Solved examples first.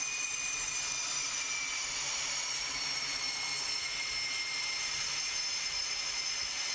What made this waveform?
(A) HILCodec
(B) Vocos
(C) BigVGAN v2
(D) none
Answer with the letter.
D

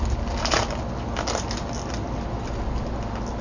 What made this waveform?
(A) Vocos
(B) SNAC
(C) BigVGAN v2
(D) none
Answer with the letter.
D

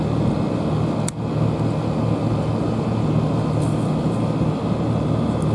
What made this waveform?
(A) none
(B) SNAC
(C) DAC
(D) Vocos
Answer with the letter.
A